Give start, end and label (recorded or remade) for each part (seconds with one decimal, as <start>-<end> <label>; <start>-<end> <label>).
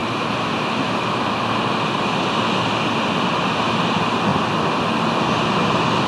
0.0-6.1 recorded